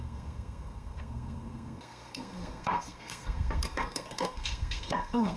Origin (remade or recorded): remade